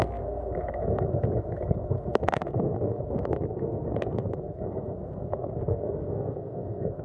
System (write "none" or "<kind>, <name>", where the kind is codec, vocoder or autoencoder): codec, SNAC